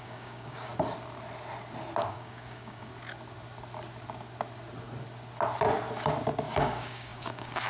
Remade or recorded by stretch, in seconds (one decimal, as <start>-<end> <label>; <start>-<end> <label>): 0.0-0.7 remade; 0.7-2.1 recorded; 2.1-2.9 remade; 2.9-6.6 recorded; 6.6-7.7 remade

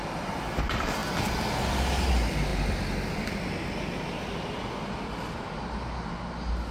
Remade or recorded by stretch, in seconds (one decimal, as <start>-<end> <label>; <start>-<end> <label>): 0.0-6.7 recorded

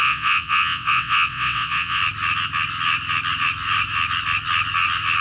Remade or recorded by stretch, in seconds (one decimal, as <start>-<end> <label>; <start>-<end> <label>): 0.0-2.0 remade; 2.0-5.2 recorded

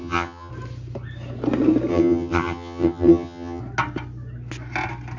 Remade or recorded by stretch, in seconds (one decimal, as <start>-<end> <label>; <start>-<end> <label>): 0.0-0.5 remade; 0.5-1.9 recorded; 1.9-3.6 remade; 3.6-5.2 recorded

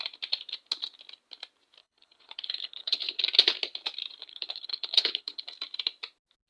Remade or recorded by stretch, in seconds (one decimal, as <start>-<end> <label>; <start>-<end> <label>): 0.0-1.8 recorded; 1.8-3.2 remade; 3.2-4.2 recorded; 4.2-5.4 remade; 5.4-6.5 recorded